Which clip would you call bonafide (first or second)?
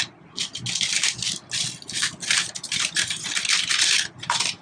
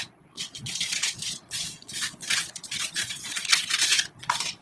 first